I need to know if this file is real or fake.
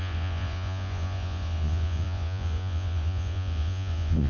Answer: fake